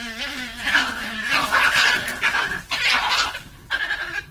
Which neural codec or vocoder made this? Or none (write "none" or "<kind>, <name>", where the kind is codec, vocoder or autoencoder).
none